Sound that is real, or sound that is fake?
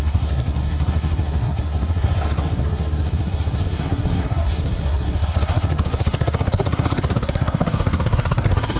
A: fake